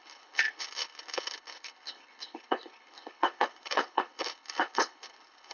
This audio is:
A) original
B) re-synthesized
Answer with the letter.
B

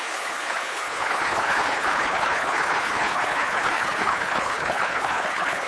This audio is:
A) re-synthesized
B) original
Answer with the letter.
A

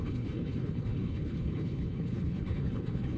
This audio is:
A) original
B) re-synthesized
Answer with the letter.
B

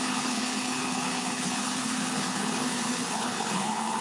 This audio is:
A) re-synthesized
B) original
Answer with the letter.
A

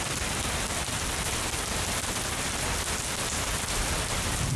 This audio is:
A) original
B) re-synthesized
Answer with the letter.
A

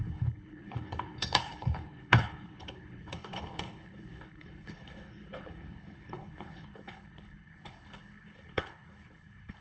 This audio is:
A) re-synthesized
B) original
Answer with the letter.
A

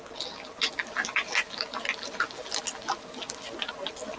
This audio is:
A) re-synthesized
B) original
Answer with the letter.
B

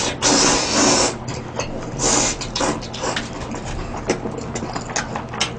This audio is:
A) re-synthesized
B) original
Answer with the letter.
B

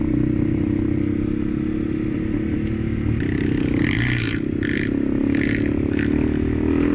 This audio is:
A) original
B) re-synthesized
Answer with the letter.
A